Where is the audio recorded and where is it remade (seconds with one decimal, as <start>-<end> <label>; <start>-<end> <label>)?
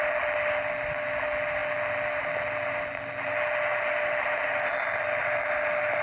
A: 0.0-6.0 recorded